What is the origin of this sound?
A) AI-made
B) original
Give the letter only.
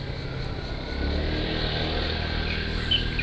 B